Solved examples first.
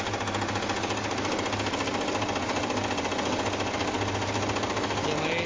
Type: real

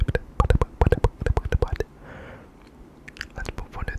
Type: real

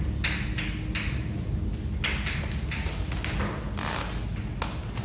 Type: real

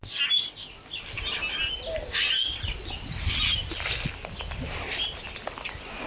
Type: real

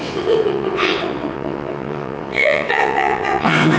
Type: fake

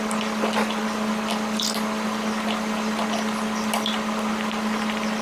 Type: real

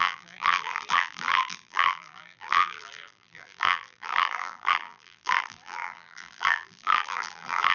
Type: fake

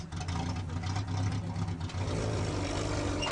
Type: real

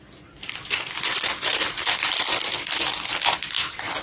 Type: real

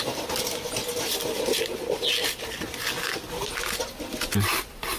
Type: real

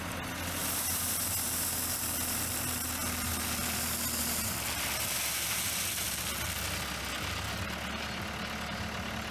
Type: real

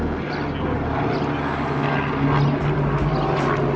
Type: real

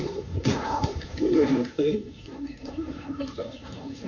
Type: fake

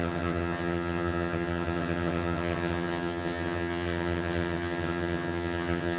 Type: fake